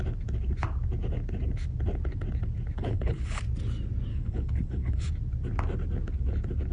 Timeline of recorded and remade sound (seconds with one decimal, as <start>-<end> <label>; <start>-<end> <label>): 0.0-2.8 recorded; 2.8-3.4 remade; 3.4-4.1 recorded; 4.1-5.1 remade; 5.1-6.7 recorded

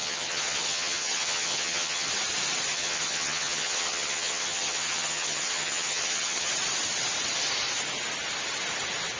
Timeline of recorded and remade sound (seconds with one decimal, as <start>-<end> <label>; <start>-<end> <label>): 0.0-2.1 remade; 2.1-2.7 recorded; 2.7-6.5 remade; 6.5-9.2 recorded

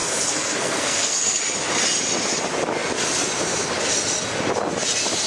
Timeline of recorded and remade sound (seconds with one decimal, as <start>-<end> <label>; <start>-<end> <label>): 0.0-1.4 remade; 1.4-5.3 recorded